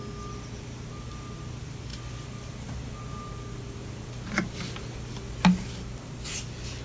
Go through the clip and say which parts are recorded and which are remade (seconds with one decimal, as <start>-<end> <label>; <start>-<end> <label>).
0.0-6.8 recorded